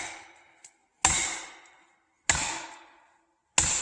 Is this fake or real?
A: real